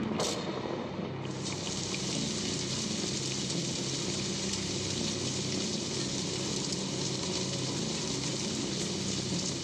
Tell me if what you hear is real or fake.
real